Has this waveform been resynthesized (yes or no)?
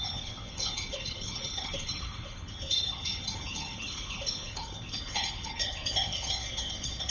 yes